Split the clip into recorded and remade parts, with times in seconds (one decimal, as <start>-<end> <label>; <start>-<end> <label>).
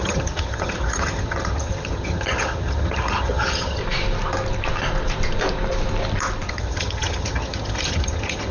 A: 0.0-3.8 remade; 3.8-6.5 recorded; 6.5-8.5 remade